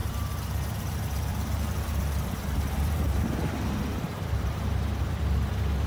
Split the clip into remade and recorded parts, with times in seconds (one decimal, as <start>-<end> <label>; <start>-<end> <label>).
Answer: 0.0-3.5 remade; 3.5-3.9 recorded; 3.9-5.2 remade; 5.2-5.9 recorded